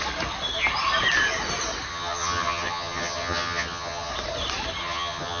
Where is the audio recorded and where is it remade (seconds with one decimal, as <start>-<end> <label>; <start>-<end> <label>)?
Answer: 0.0-1.9 recorded; 1.9-4.1 remade; 4.1-4.8 recorded; 4.8-5.4 remade